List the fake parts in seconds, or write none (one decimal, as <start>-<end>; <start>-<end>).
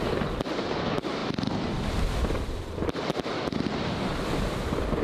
none